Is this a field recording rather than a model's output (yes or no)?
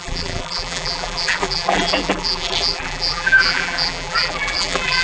no